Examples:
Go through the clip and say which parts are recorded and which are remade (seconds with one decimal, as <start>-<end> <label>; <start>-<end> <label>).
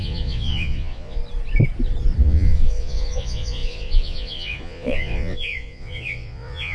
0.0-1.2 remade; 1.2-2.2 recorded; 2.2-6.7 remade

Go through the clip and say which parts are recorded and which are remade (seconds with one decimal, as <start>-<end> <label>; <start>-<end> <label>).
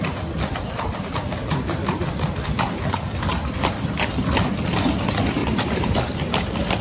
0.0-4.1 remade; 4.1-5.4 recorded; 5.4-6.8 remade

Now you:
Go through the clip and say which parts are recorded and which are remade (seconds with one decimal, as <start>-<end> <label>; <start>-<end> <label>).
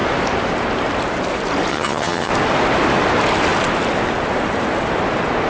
0.0-1.7 recorded; 1.7-2.3 remade; 2.3-5.5 recorded